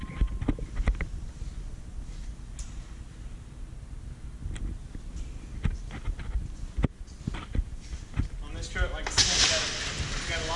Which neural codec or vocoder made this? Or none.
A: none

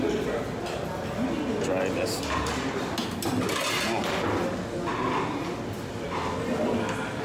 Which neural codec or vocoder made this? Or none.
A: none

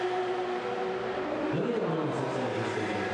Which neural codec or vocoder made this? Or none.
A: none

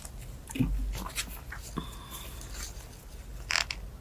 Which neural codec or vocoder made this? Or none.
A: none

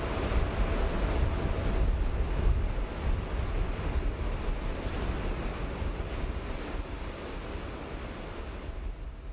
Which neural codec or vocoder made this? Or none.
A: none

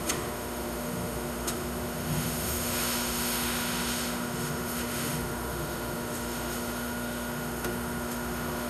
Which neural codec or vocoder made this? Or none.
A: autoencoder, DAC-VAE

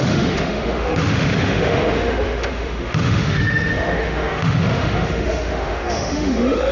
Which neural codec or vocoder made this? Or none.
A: autoencoder, DAC-VAE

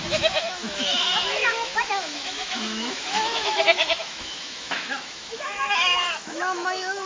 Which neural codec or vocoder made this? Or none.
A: autoencoder, DAC-VAE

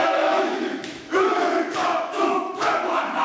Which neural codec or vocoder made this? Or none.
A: autoencoder, DAC-VAE